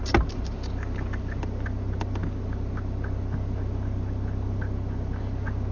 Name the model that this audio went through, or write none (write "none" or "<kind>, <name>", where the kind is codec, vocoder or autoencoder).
none